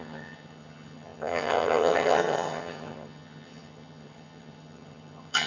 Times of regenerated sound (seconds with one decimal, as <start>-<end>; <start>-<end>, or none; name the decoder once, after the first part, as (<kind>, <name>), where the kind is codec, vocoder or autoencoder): 0.0-5.5 (vocoder, HiFi-GAN)